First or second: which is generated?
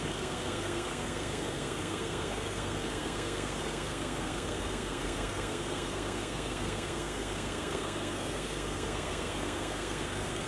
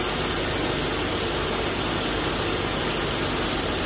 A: first